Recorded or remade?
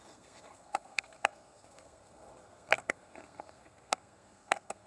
remade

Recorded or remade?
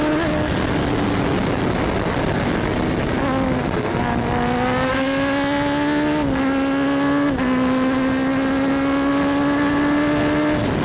recorded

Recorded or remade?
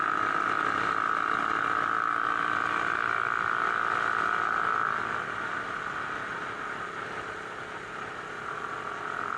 recorded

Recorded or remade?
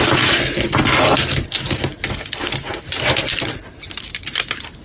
recorded